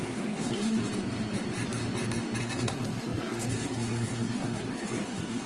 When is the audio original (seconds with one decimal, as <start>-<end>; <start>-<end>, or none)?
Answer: 0.8-2.4